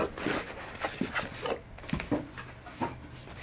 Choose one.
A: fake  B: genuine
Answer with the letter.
A